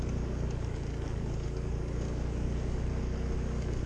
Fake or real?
fake